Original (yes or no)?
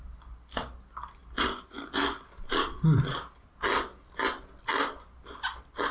yes